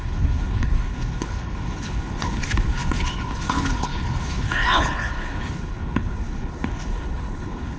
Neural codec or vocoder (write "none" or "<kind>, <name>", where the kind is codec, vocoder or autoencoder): codec, HILCodec